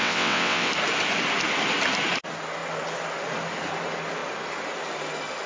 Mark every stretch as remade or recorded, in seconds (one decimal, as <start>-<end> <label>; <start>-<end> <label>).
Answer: 0.0-0.7 remade; 0.7-5.5 recorded